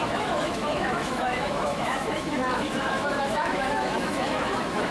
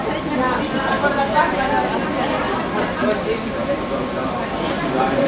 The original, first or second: second